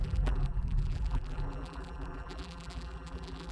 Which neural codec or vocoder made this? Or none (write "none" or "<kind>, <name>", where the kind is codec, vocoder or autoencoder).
vocoder, BigVGAN v2